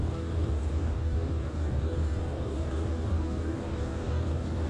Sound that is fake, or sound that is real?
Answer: fake